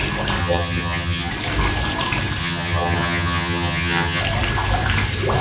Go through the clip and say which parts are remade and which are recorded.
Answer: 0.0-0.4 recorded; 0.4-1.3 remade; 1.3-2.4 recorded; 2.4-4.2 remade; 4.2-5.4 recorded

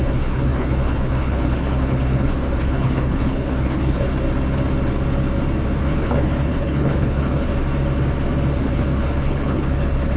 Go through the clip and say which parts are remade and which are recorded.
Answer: 0.0-4.1 remade; 4.1-5.8 recorded; 5.8-7.5 remade; 7.5-8.6 recorded; 8.6-10.2 remade

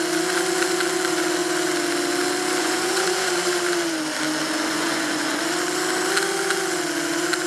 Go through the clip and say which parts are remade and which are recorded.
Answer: 0.0-2.6 recorded; 2.6-3.3 remade; 3.3-4.7 recorded; 4.7-5.4 remade; 5.4-7.5 recorded

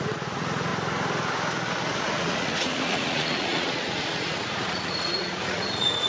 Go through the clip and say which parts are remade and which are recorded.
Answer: 0.0-0.7 remade; 0.7-2.0 recorded; 2.0-6.1 remade

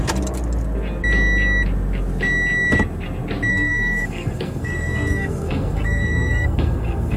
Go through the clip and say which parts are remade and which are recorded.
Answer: 0.0-3.5 recorded; 3.5-7.2 remade